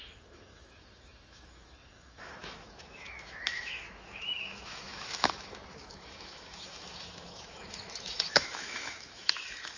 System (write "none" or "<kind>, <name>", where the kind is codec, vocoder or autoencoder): autoencoder, DAC-VAE